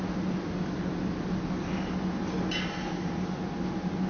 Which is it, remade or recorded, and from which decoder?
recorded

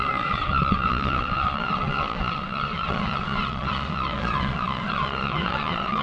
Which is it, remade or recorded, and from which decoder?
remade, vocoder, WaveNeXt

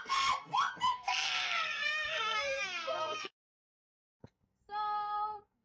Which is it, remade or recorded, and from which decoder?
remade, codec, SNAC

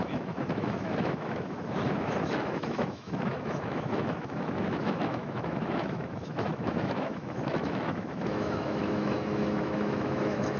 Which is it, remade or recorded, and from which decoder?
remade, autoencoder, DAC-VAE